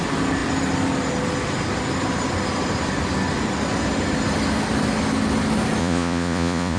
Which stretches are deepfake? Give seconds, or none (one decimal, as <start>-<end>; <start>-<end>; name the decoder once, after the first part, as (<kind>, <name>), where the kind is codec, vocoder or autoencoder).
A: 5.8-6.8 (vocoder, Vocos)